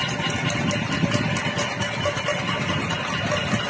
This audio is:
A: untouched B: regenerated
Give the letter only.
A